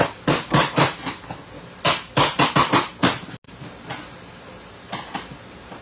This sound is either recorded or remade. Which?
recorded